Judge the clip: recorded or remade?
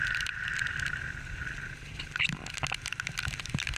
recorded